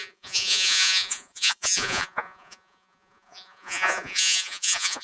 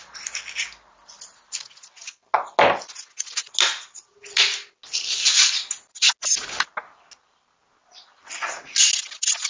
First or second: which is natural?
second